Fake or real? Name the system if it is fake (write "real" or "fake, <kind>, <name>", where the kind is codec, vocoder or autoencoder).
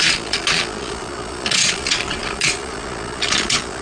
fake, vocoder, Vocos